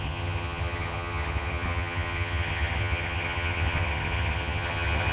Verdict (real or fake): fake